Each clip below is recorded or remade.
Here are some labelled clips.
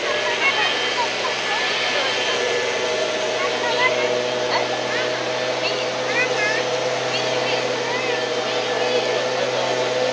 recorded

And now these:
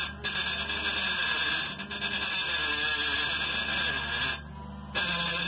recorded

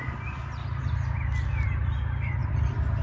recorded